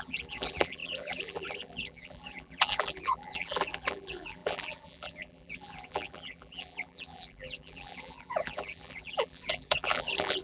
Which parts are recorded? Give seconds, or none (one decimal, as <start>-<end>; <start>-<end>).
none